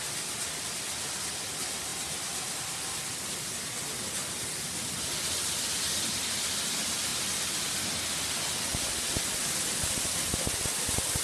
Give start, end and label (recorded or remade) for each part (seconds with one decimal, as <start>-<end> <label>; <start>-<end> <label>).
0.0-11.2 recorded